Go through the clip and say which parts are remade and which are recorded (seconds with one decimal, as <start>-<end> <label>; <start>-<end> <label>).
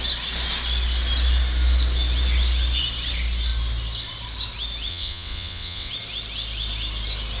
0.0-4.9 recorded; 4.9-5.9 remade; 5.9-7.4 recorded